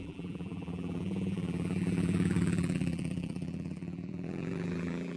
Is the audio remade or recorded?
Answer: remade